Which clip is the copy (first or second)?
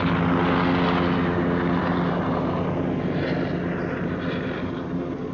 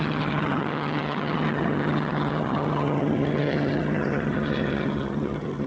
second